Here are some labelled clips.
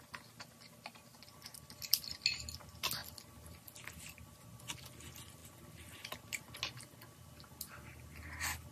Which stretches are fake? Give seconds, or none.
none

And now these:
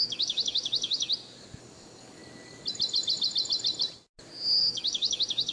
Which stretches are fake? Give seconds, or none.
0.0-1.1; 1.6-2.2; 4.6-5.5

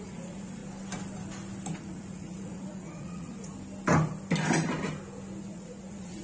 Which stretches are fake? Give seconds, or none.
0.0-0.6; 1.8-3.5; 5.4-6.2

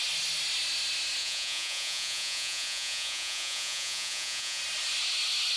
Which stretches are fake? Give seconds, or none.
1.2-4.6

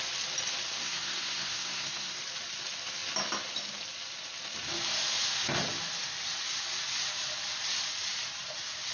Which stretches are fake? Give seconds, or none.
0.8-2.2

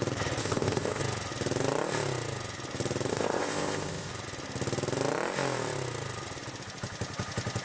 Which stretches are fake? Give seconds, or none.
0.4-1.0; 3.1-4.1